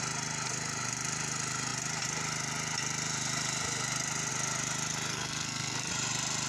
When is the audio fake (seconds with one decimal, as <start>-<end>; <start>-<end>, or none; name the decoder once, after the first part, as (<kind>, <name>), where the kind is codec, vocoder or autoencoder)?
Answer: 5.1-5.9 (codec, SNAC)